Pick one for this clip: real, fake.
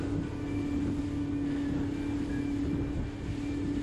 real